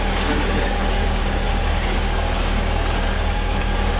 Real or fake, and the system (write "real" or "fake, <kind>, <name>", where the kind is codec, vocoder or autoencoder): fake, codec, DAC